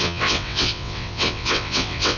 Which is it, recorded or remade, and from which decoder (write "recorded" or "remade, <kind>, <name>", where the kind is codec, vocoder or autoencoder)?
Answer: remade, vocoder, WaveNeXt